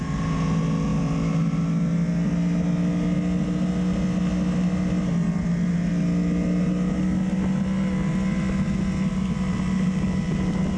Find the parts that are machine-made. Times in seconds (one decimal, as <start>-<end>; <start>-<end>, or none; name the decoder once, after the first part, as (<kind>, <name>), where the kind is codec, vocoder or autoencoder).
none